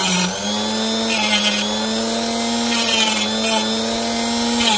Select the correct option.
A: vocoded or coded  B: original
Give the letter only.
B